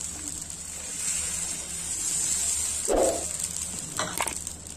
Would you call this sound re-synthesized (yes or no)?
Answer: no